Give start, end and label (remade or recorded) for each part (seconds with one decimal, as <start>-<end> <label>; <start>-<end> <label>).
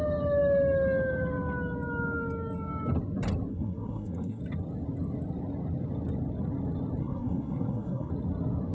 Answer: 0.0-3.5 recorded; 3.5-4.4 remade; 4.4-7.0 recorded; 7.0-8.1 remade; 8.1-8.7 recorded